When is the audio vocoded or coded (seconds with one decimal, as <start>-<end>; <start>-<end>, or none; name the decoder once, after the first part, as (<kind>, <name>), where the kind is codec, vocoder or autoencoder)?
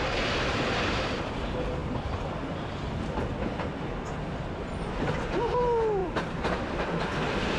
6.0-6.9 (vocoder, BigVGAN v2)